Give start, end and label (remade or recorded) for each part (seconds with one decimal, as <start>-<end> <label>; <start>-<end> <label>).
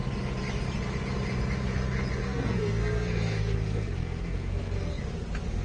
0.0-2.2 recorded; 2.2-5.0 remade; 5.0-5.6 recorded